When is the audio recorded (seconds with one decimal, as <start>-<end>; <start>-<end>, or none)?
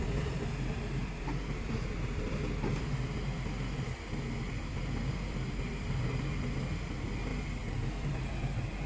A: 0.0-8.9